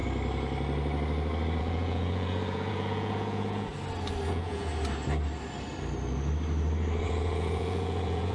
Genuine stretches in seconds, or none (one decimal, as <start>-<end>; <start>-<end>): 0.0-1.6; 3.7-4.3; 4.7-7.0